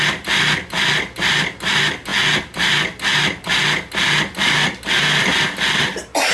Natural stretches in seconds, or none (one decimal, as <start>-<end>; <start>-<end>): 0.0-6.3